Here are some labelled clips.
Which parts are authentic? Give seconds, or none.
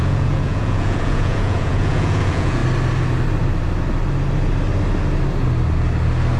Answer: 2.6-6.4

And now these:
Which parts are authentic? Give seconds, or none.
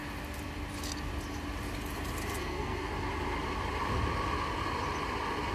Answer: 0.0-2.4; 2.9-5.5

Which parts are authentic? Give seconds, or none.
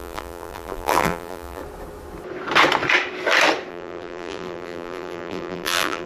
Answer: 1.6-3.7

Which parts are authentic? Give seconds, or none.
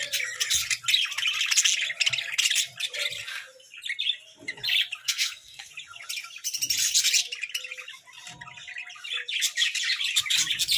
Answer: 0.0-5.0; 5.7-10.8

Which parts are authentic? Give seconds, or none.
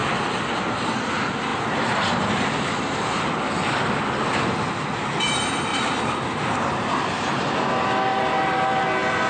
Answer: 0.0-1.5; 2.3-5.7; 7.4-8.1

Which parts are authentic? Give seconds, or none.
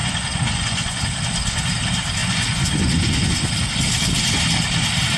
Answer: 1.0-2.2; 3.5-5.2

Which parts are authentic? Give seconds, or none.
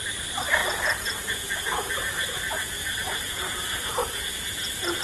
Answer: 0.0-0.6; 3.6-4.0